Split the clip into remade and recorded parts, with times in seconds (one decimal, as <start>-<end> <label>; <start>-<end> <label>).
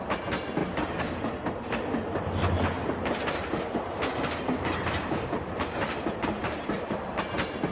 0.0-0.6 recorded; 0.6-1.8 remade; 1.8-3.4 recorded; 3.4-7.2 remade; 7.2-7.7 recorded